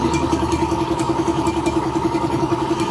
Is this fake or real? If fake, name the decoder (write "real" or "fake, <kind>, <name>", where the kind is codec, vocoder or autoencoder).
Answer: fake, codec, DAC